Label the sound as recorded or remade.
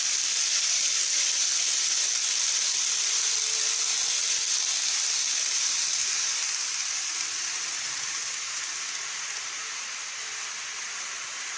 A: recorded